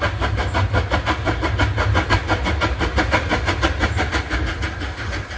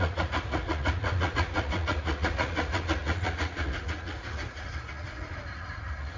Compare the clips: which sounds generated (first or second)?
second